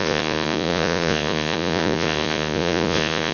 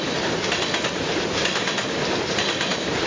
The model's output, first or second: first